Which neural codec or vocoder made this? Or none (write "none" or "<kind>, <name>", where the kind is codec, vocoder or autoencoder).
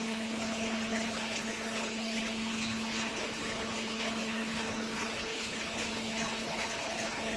codec, HILCodec